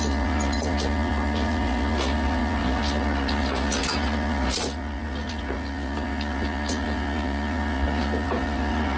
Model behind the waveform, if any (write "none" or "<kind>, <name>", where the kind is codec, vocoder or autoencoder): vocoder, Vocos